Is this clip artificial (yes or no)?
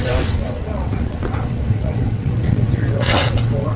yes